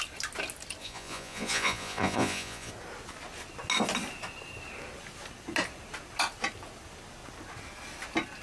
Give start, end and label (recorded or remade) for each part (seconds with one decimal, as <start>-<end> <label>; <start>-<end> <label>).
0.0-0.8 recorded; 0.8-2.7 remade; 2.7-8.4 recorded